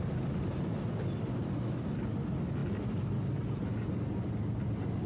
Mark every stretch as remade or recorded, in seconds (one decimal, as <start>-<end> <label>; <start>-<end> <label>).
0.0-5.1 recorded

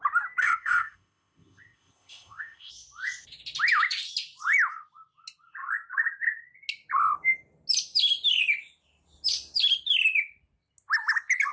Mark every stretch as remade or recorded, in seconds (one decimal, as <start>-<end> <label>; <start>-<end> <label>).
0.0-0.4 recorded; 0.4-2.7 remade; 2.7-11.5 recorded

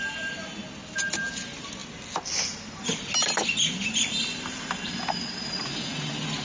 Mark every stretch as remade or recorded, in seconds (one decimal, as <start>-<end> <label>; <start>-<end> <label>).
0.0-6.4 recorded

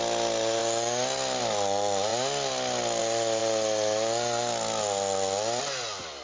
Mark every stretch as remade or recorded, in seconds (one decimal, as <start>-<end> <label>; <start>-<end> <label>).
0.0-6.2 recorded

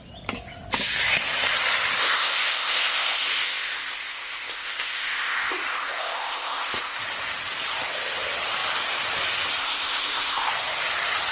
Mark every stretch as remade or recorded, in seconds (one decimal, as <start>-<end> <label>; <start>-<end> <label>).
0.0-2.0 recorded; 2.0-7.0 remade; 7.0-9.6 recorded; 9.6-10.5 remade; 10.5-11.3 recorded

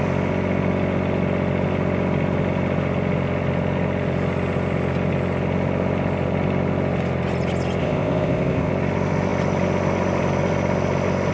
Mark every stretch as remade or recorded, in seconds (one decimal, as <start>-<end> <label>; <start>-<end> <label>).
0.0-7.8 recorded; 7.8-8.7 remade; 8.7-11.3 recorded